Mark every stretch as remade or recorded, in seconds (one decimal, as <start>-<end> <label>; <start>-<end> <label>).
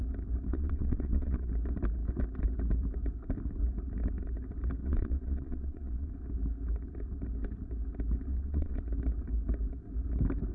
0.0-0.5 recorded; 0.5-1.5 remade; 1.5-4.8 recorded; 4.8-6.1 remade; 6.1-8.3 recorded; 8.3-8.8 remade; 8.8-10.5 recorded